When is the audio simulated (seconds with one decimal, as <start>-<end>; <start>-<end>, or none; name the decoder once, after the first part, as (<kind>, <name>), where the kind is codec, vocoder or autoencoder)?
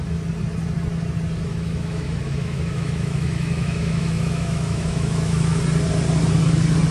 1.5-5.6 (autoencoder, DAC-VAE)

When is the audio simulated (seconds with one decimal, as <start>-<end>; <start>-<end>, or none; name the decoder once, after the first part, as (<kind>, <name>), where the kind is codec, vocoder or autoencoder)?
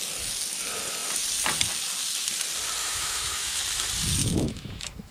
2.8-3.6 (autoencoder, DAC-VAE); 4.2-5.1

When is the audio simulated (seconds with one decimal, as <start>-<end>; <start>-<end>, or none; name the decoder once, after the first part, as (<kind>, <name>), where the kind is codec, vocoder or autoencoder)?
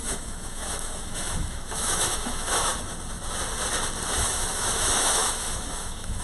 0.0-2.7 (autoencoder, DAC-VAE); 4.2-6.2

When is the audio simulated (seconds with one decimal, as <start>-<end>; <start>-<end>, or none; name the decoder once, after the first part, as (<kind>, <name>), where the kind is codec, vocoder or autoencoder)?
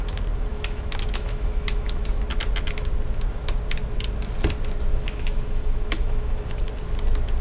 0.5-2.0 (autoencoder, DAC-VAE); 4.9-6.6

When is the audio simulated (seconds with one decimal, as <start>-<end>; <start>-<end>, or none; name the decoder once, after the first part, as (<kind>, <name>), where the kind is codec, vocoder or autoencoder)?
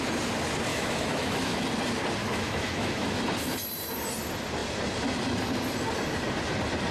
0.7-1.6 (autoencoder, DAC-VAE); 2.2-3.2